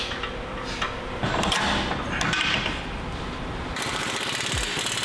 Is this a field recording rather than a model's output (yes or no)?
yes